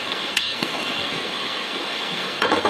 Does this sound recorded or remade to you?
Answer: remade